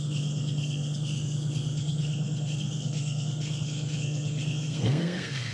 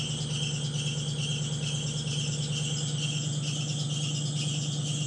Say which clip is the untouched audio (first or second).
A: second